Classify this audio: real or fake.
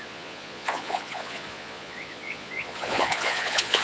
fake